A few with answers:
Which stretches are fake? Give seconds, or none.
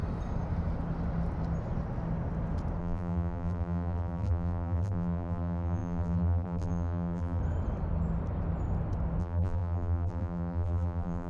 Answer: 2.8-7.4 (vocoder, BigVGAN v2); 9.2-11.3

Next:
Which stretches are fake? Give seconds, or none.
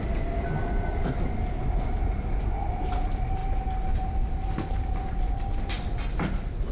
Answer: 3.4-5.1 (vocoder, BigVGAN v2)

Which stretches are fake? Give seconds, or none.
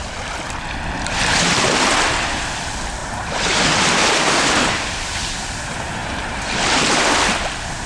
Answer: 3.0-5.3 (vocoder, BigVGAN v2); 6.0-6.6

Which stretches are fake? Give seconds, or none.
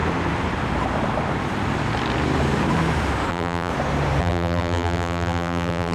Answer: 3.3-3.7 (vocoder, BigVGAN v2); 4.2-5.9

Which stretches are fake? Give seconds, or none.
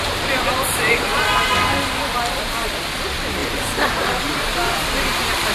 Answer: 0.0-1.1 (vocoder, BigVGAN v2); 3.0-5.5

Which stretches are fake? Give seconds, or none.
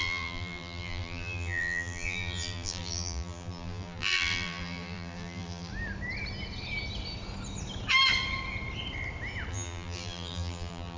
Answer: 0.0-5.7 (vocoder, BigVGAN v2); 9.5-11.0